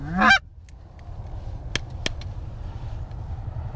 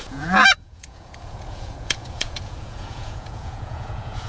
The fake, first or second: second